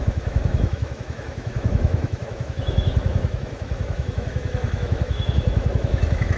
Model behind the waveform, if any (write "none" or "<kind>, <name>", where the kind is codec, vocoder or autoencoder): autoencoder, DAC-VAE